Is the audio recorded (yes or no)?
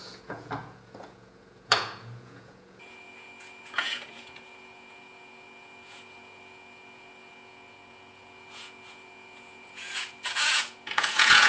no